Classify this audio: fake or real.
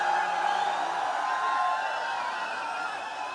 real